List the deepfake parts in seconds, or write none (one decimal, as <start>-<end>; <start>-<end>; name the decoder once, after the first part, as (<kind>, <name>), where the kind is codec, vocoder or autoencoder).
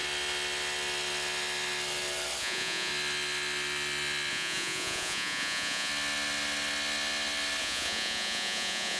2.4-2.9 (vocoder, Vocos); 4.3-5.9; 7.6-9.0